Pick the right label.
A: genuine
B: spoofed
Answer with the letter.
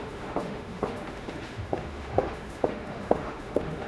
B